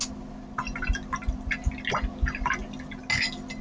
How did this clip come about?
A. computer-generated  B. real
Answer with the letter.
B